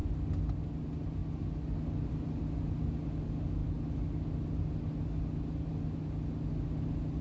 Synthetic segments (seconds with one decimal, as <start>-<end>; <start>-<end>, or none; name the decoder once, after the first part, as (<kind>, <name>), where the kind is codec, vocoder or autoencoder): none